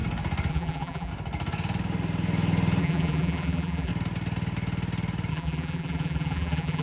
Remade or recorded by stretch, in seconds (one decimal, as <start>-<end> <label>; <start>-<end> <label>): 0.0-0.5 recorded; 0.5-1.1 remade; 1.1-2.8 recorded; 2.8-3.9 remade; 3.9-5.3 recorded; 5.3-6.8 remade